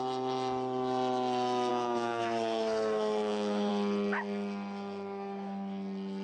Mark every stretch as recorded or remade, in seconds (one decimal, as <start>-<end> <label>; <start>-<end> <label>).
0.0-1.7 recorded; 1.7-3.7 remade; 3.7-6.2 recorded